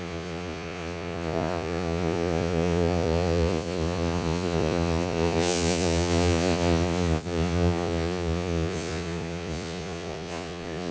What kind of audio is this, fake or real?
fake